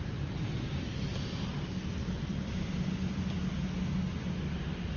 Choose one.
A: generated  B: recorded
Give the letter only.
B